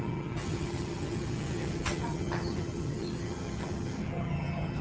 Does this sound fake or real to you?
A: fake